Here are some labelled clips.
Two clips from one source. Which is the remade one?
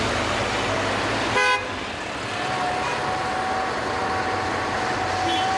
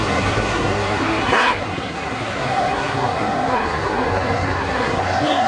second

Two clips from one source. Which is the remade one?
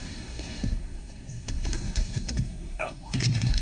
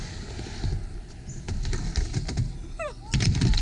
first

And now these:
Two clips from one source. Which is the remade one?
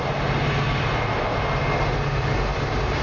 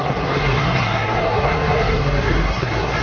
second